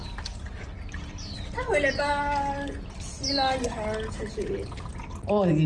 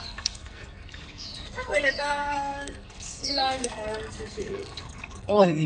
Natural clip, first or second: first